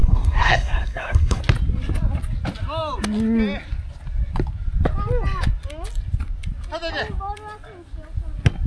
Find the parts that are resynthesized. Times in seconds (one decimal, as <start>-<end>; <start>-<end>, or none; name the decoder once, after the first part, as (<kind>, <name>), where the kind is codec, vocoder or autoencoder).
0.0-1.4 (codec, SNAC)